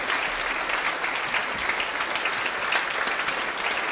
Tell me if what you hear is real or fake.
real